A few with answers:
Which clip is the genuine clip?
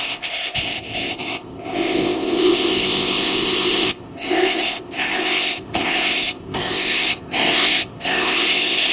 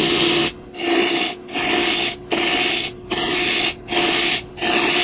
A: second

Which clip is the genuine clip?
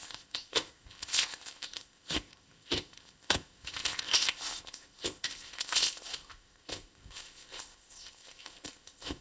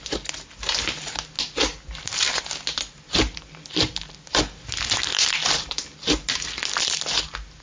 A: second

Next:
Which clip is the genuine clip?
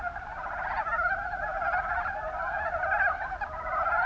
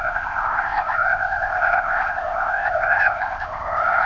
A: first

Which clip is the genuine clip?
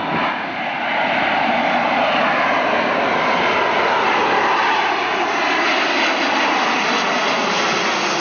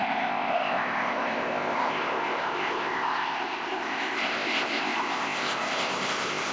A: first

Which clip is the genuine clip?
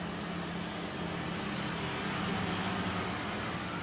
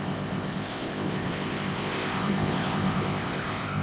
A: first